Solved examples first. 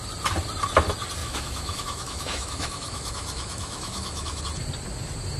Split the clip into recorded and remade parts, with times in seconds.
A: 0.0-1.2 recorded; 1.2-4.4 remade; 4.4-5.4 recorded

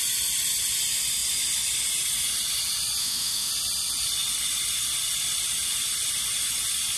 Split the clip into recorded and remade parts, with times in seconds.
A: 0.0-3.0 recorded; 3.0-3.5 remade; 3.5-7.0 recorded

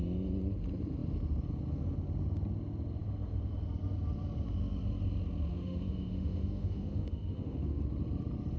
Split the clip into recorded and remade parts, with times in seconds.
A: 0.0-5.5 recorded; 5.5-7.8 remade; 7.8-8.6 recorded

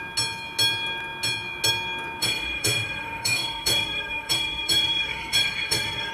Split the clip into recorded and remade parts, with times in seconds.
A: 0.0-2.2 recorded; 2.2-6.1 remade

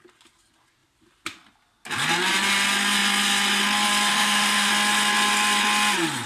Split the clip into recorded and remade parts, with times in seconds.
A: 0.0-4.1 recorded; 4.1-4.7 remade; 4.7-6.3 recorded

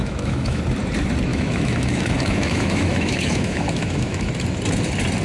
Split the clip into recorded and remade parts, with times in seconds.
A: 0.0-0.6 remade; 0.6-1.3 recorded; 1.3-4.3 remade; 4.3-5.2 recorded